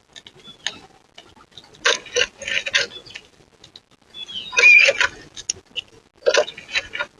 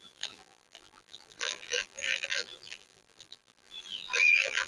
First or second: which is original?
first